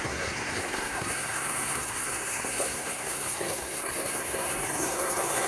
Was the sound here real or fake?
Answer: fake